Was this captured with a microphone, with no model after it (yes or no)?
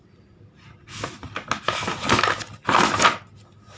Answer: yes